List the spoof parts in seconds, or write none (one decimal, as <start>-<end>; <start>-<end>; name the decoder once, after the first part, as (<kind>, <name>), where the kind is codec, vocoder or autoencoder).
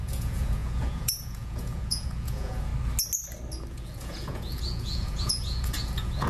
0.0-2.7 (vocoder, Vocos); 3.7-6.3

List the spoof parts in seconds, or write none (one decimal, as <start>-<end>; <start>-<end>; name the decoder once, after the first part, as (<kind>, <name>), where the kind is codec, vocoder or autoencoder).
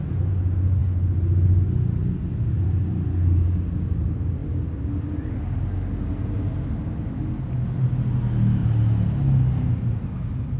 none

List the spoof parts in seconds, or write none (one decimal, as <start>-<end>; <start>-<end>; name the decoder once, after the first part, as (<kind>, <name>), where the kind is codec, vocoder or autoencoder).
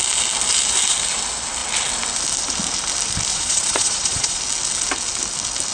3.3-4.4 (vocoder, Vocos)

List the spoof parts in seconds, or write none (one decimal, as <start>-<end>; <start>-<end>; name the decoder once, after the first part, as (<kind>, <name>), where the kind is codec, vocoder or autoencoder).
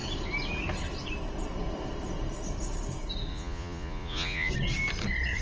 3.3-4.5 (vocoder, Vocos)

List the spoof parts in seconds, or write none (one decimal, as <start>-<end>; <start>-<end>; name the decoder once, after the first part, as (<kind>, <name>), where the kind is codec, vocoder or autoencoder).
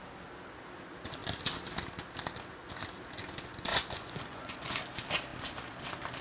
3.7-4.8 (vocoder, Vocos)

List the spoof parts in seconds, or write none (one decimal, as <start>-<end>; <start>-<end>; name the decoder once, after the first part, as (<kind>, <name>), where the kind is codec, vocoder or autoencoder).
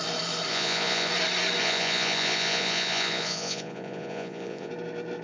0.5-1.1 (vocoder, Vocos); 1.6-4.7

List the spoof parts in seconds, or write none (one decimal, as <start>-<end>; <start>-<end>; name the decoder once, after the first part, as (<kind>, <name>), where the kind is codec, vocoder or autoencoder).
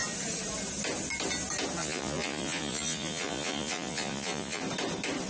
1.8-4.6 (vocoder, Vocos)